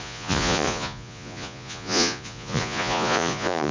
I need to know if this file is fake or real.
fake